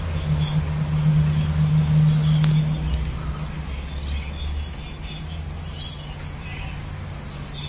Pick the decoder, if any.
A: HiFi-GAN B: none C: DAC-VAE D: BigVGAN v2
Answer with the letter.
B